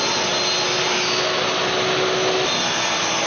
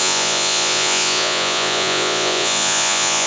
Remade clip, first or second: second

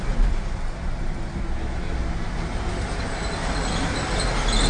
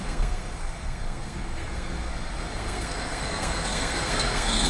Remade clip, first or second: second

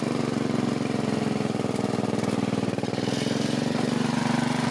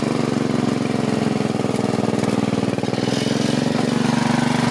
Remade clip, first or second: first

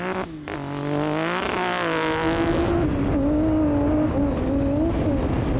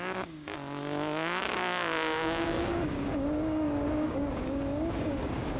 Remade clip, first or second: second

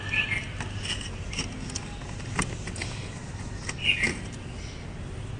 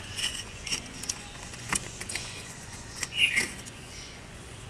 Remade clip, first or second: second